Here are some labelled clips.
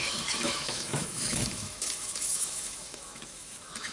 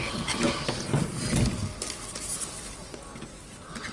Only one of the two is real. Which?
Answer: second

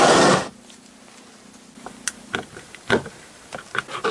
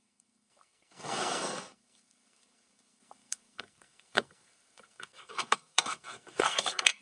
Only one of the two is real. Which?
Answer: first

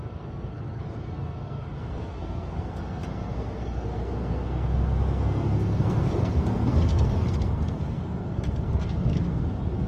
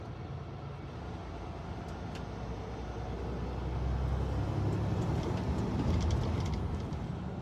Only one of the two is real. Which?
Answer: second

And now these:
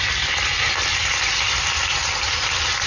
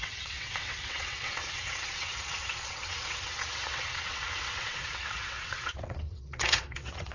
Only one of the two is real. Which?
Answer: first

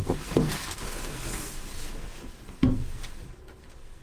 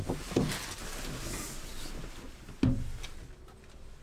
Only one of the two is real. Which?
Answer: second